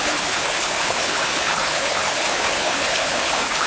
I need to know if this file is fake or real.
fake